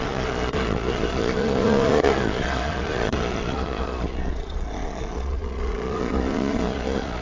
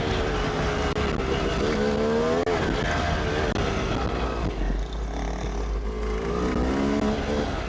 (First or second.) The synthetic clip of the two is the first